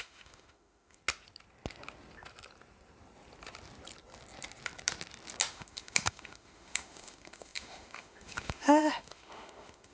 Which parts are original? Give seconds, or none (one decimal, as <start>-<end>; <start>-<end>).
1.0-5.5